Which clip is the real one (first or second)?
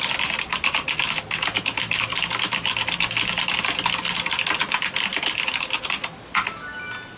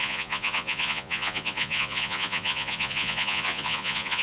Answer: first